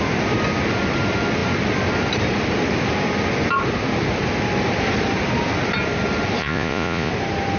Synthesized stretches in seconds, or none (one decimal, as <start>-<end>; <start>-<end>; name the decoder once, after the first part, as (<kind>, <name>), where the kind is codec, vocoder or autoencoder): 6.4-7.1 (vocoder, Vocos)